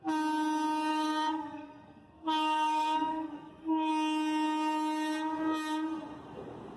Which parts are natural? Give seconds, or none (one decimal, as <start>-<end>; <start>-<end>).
0.0-0.9; 3.9-6.8